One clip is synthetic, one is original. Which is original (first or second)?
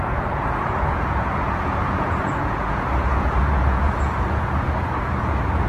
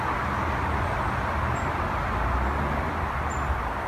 second